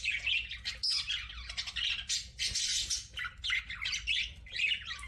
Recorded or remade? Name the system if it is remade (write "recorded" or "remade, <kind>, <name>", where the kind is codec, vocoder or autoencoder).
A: recorded